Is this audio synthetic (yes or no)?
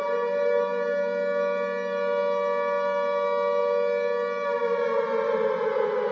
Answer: no